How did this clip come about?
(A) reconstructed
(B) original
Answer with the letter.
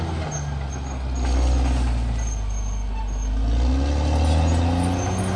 B